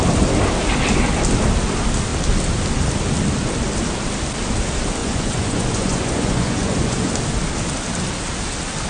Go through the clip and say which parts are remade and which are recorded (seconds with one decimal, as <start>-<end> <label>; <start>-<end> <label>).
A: 0.0-5.0 recorded; 5.0-7.1 remade; 7.1-8.9 recorded